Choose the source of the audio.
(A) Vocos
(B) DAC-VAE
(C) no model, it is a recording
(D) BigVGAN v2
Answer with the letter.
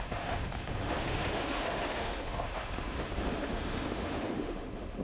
B